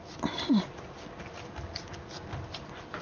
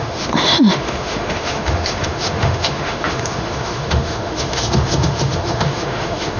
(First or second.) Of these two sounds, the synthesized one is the second